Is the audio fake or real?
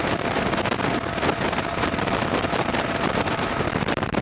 fake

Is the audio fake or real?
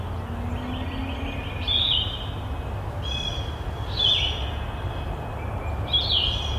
real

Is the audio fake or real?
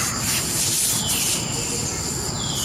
real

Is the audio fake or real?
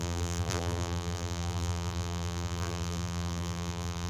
fake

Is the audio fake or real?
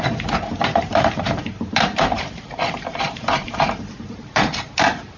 fake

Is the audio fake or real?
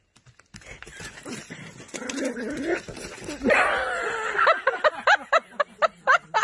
real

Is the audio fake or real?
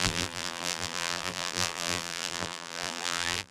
fake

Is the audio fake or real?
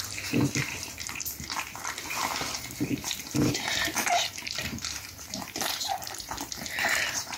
fake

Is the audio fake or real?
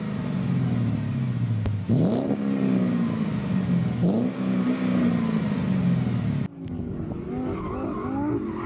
real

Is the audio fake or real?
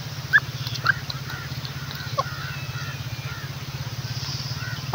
real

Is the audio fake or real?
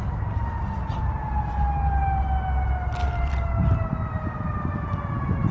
real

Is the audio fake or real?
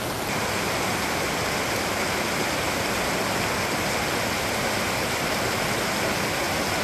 real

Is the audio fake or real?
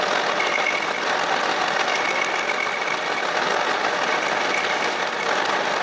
real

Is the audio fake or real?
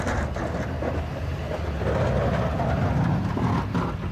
real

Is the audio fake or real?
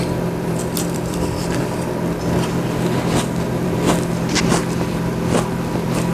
fake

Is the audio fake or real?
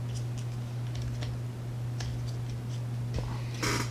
real